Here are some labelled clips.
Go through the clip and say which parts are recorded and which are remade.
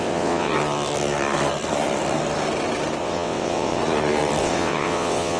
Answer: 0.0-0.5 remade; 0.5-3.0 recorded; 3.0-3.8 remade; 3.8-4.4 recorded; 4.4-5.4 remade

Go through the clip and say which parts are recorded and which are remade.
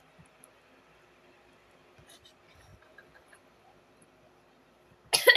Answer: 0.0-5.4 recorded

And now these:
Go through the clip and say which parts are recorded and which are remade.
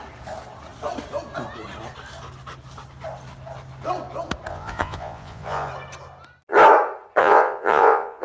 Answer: 0.0-4.5 recorded; 4.5-5.7 remade; 5.7-7.2 recorded; 7.2-8.2 remade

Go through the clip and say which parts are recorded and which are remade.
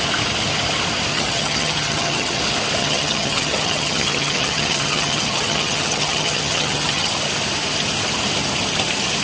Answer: 0.0-1.1 recorded; 1.1-2.4 remade; 2.4-2.8 recorded; 2.8-7.1 remade; 7.1-9.2 recorded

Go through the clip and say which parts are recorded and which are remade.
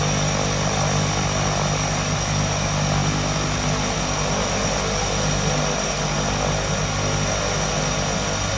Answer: 0.0-3.0 recorded; 3.0-3.6 remade; 3.6-8.6 recorded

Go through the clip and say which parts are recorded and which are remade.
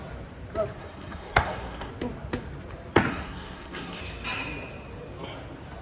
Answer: 0.0-0.8 recorded; 0.8-1.9 remade; 1.9-3.1 recorded; 3.1-4.0 remade; 4.0-5.8 recorded